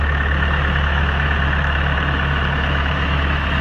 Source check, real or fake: fake